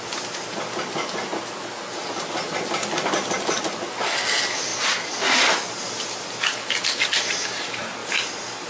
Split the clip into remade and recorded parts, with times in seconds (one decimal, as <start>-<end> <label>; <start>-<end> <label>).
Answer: 0.0-8.7 recorded

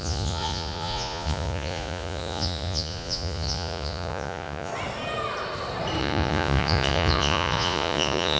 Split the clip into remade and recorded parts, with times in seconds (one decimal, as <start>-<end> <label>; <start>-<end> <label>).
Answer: 0.0-4.7 remade; 4.7-6.0 recorded; 6.0-8.4 remade

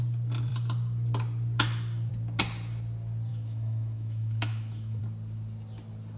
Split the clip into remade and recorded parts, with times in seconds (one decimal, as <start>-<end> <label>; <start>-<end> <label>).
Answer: 0.0-3.3 recorded; 3.3-5.0 remade; 5.0-6.2 recorded